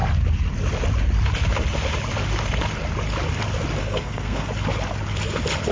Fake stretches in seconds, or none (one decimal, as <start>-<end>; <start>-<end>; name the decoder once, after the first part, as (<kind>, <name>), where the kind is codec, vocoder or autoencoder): 3.8-4.5 (codec, SNAC)